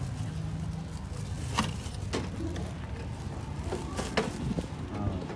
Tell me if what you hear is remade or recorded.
recorded